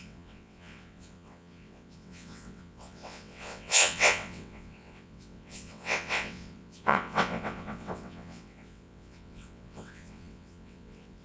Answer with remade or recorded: remade